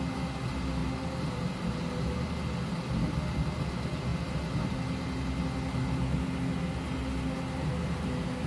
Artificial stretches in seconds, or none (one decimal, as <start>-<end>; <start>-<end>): none